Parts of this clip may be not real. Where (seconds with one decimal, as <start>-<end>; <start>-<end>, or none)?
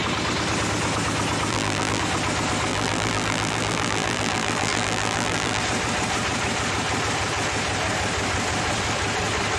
1.5-2.0; 2.7-5.6